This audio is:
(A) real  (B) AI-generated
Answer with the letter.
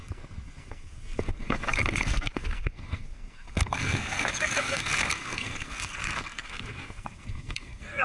B